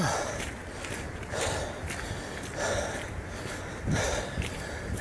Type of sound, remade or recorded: recorded